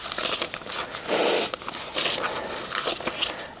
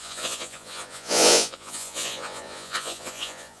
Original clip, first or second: first